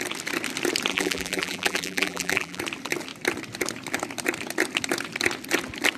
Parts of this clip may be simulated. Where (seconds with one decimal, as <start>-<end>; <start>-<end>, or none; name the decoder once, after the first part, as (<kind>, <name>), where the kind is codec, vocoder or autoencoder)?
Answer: 0.9-2.6 (vocoder, BigVGAN v2)